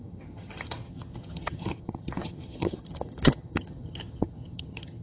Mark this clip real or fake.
fake